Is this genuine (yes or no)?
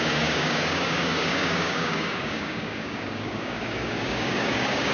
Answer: no